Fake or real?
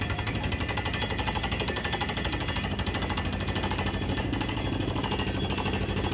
real